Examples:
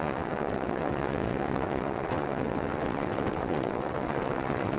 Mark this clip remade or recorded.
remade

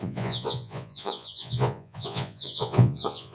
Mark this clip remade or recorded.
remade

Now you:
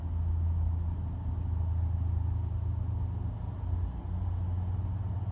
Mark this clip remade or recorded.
recorded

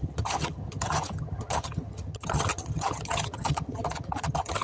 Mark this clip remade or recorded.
remade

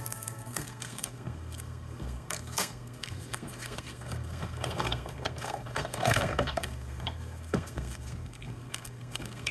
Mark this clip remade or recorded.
remade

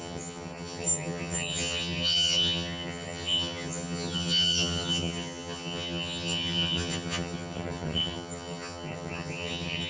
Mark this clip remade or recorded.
remade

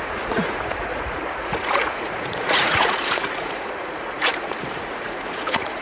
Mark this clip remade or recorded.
remade